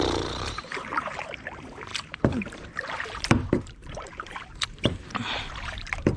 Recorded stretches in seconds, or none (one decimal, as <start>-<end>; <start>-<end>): none